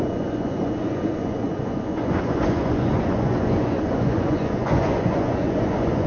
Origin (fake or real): fake